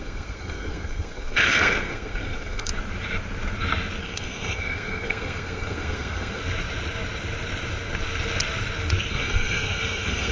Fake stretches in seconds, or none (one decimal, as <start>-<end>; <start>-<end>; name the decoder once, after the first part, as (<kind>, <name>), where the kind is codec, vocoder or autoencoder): 0.0-2.7 (codec, SNAC); 4.0-6.4; 9.1-10.3